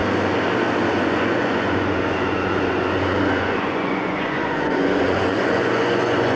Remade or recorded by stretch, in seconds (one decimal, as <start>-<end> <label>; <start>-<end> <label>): 0.0-0.9 recorded; 0.9-6.4 remade